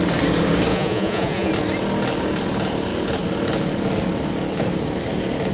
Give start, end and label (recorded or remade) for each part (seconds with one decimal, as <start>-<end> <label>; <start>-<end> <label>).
0.0-0.7 recorded; 0.7-1.5 remade; 1.5-5.5 recorded